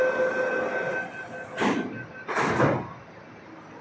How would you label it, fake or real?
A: real